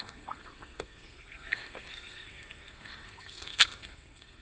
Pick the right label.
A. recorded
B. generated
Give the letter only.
B